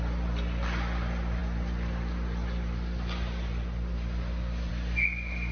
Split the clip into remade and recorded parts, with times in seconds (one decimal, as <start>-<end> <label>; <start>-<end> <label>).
0.0-5.5 recorded